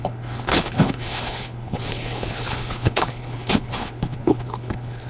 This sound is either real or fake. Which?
fake